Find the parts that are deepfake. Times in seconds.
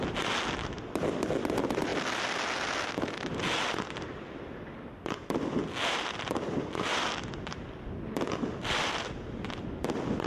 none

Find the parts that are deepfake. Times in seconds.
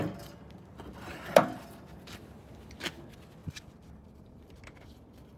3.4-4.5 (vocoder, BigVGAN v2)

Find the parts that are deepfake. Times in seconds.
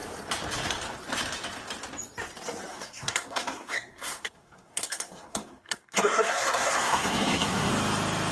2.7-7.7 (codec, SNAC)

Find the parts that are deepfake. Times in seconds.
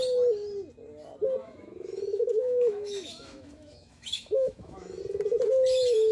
1.4-5.0 (autoencoder, DAC-VAE)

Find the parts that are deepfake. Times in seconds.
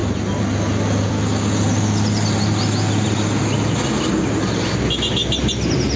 none